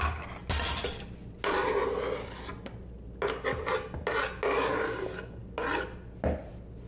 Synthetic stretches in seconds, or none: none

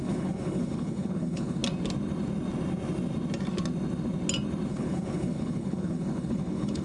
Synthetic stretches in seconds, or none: 0.0-1.6; 4.7-6.8